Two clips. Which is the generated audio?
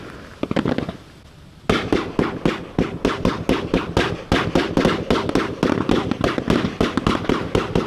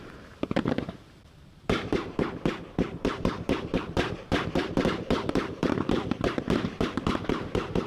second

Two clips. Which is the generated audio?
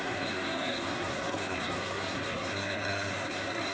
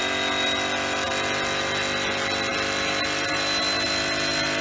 first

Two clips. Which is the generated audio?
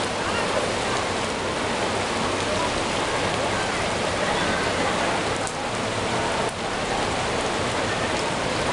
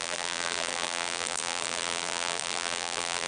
second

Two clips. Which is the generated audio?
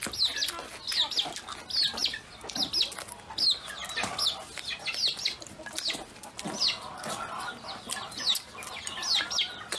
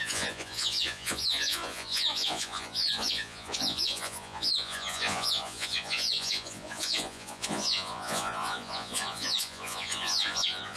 second